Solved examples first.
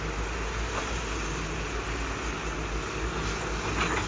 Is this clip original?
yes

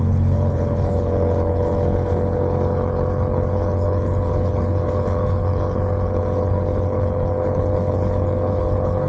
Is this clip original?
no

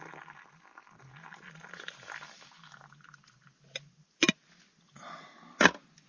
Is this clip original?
yes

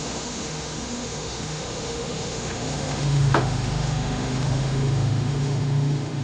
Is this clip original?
no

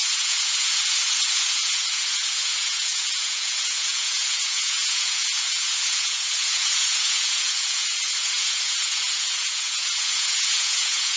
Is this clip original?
no